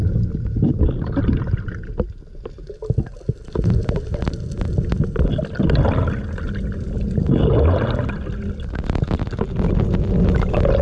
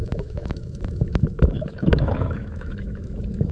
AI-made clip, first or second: second